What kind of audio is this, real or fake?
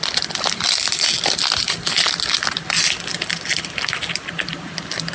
real